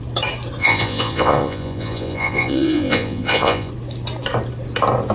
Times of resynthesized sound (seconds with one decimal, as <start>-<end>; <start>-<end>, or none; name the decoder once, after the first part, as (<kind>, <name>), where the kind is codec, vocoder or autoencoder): 0.6-3.7 (vocoder, Vocos)